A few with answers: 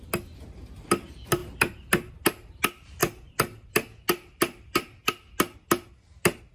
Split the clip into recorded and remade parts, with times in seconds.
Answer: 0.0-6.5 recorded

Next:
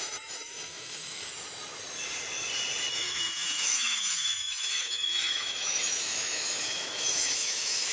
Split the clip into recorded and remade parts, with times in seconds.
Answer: 0.0-1.3 remade; 1.3-2.9 recorded; 2.9-7.9 remade